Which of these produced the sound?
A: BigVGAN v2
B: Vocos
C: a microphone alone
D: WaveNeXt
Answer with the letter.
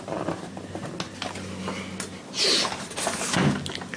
C